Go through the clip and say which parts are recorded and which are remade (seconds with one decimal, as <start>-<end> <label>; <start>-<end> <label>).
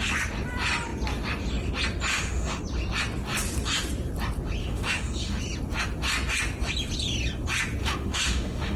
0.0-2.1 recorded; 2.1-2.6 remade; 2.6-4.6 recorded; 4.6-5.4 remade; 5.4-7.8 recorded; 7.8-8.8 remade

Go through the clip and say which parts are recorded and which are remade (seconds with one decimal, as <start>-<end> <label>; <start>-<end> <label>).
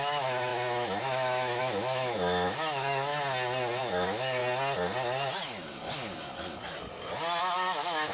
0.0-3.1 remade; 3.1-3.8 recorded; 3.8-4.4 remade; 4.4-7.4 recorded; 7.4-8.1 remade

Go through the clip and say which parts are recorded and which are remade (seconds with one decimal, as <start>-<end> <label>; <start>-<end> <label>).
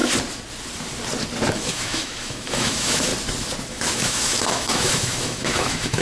0.0-1.5 recorded; 1.5-3.1 remade; 3.1-3.7 recorded; 3.7-6.0 remade